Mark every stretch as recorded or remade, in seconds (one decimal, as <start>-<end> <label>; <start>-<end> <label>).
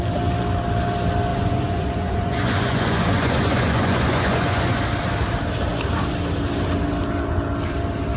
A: 0.0-1.3 recorded; 1.3-4.8 remade; 4.8-8.2 recorded